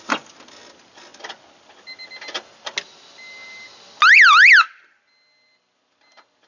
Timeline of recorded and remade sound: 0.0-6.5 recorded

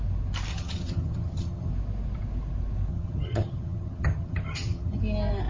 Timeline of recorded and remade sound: 0.0-0.5 recorded; 0.5-1.7 remade; 1.7-2.9 recorded; 2.9-5.0 remade; 5.0-5.5 recorded

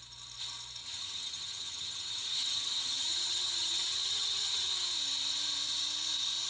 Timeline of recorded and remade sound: 0.0-0.8 recorded; 0.8-4.7 remade; 4.7-6.5 recorded